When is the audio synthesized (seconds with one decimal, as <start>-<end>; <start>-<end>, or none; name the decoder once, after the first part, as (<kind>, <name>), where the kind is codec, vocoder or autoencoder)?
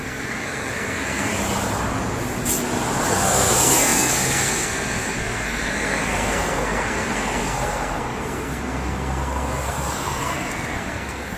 0.0-1.3 (codec, SNAC); 3.1-11.4